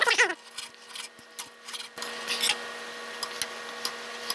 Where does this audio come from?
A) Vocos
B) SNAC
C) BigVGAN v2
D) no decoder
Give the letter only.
D